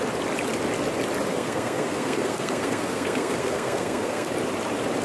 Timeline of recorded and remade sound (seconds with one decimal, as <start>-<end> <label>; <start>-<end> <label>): 0.0-1.3 recorded; 1.3-4.3 remade; 4.3-5.0 recorded